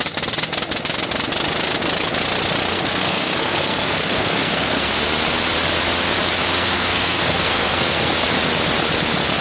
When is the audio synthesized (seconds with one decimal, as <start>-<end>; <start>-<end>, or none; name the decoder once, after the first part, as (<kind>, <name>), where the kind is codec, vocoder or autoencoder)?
2.7-4.9 (codec, SNAC); 6.5-8.1